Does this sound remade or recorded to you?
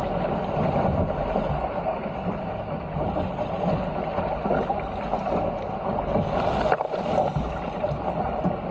recorded